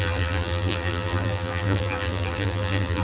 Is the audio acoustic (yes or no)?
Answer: no